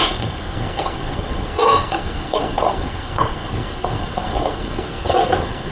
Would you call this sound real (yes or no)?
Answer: no